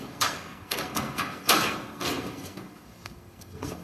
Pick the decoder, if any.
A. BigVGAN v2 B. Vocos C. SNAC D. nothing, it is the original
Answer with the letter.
C